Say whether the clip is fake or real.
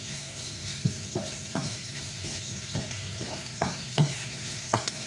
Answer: fake